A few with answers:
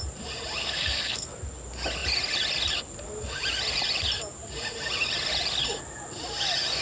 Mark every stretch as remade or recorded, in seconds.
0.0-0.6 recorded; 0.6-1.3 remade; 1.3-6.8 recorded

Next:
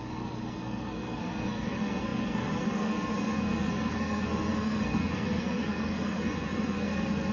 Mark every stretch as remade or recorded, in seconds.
0.0-7.3 remade

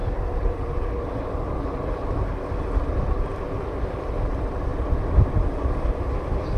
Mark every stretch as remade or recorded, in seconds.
0.0-6.6 recorded